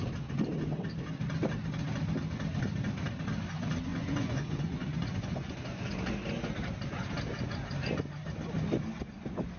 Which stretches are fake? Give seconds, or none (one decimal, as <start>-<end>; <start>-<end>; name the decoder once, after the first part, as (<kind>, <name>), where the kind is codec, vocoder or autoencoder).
3.9-6.1 (vocoder, Vocos)